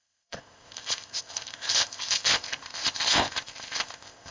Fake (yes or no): yes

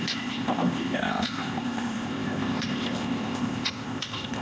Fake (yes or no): yes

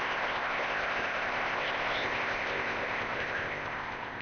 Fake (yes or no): yes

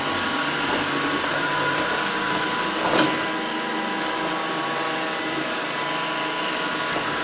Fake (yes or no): no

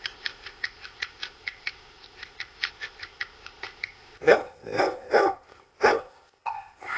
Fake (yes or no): yes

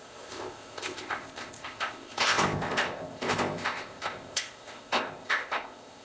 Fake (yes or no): yes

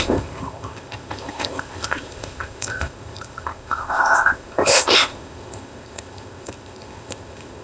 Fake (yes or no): yes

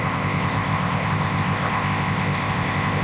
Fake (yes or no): yes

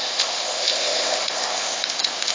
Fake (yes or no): yes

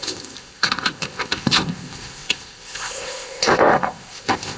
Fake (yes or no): yes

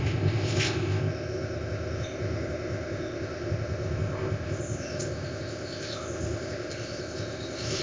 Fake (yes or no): yes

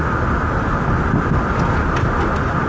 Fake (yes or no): no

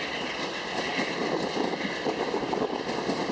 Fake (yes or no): no